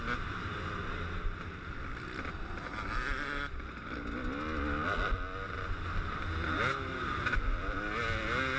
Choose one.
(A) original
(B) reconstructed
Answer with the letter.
A